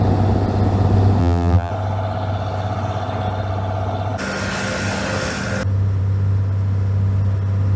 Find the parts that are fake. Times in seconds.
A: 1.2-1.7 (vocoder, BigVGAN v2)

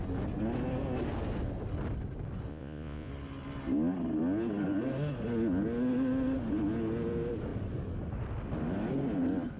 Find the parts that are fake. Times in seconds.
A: 2.5-3.1 (vocoder, Vocos)